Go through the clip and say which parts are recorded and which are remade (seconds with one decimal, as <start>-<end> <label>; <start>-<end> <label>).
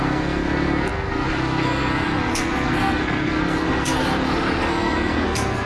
0.0-4.0 remade; 4.0-4.6 recorded; 4.6-5.7 remade